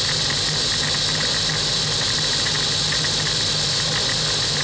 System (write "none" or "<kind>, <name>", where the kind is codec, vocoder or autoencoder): none